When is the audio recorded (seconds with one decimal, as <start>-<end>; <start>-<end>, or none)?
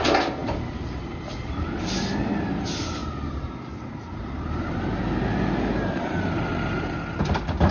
0.0-7.7